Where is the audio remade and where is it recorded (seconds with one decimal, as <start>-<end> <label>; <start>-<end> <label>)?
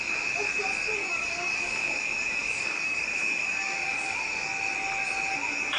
0.0-1.0 recorded; 1.0-4.3 remade; 4.3-5.8 recorded